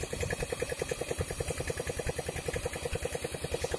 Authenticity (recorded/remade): recorded